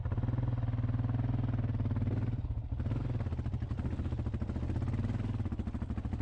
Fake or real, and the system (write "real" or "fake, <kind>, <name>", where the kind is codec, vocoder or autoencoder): real